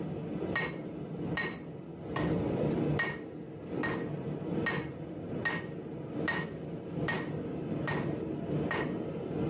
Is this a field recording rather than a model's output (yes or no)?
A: yes